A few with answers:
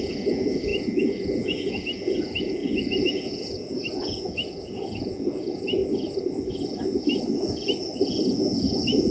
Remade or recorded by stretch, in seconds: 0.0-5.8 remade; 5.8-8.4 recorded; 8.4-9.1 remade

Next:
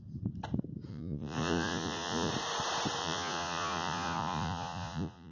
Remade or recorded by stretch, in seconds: 0.0-0.9 recorded; 0.9-2.3 remade; 2.3-3.0 recorded; 3.0-5.3 remade